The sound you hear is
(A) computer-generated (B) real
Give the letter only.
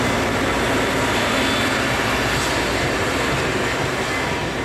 B